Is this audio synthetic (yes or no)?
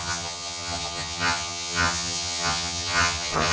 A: yes